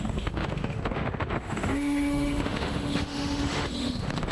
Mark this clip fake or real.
fake